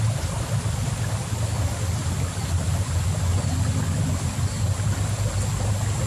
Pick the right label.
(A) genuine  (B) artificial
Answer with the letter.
A